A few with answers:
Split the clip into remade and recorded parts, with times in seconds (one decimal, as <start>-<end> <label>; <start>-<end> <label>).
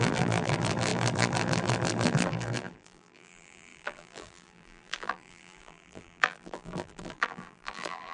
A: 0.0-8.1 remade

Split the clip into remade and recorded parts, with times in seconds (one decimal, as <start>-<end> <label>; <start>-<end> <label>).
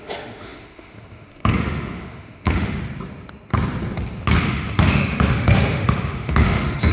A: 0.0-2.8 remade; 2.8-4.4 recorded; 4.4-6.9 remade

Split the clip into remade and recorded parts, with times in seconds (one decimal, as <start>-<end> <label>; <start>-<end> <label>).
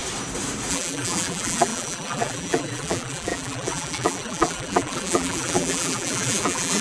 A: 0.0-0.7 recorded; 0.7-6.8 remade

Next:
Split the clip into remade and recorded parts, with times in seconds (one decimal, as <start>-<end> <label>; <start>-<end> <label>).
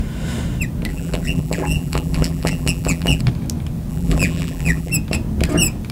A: 0.0-0.9 recorded; 0.9-3.2 remade; 3.2-3.9 recorded; 3.9-4.9 remade; 4.9-5.9 recorded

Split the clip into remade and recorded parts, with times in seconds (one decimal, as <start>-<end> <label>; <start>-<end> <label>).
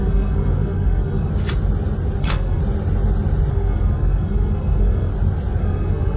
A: 0.0-1.3 remade; 1.3-2.2 recorded; 2.2-2.6 remade; 2.6-3.5 recorded; 3.5-5.1 remade; 5.1-5.6 recorded; 5.6-6.2 remade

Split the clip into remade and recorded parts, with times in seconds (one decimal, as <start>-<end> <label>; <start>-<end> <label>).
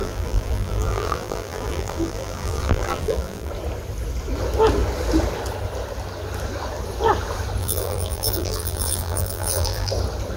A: 0.0-3.5 remade; 3.5-7.6 recorded; 7.6-9.9 remade; 9.9-10.4 recorded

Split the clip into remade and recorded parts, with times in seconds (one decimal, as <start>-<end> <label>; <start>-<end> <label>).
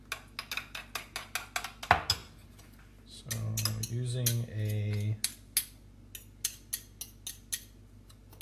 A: 0.0-8.4 recorded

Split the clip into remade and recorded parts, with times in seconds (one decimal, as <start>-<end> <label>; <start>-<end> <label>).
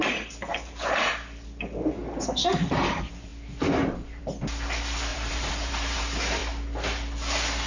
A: 0.0-0.5 recorded; 0.5-1.1 remade; 1.1-5.1 recorded; 5.1-6.0 remade; 6.0-7.7 recorded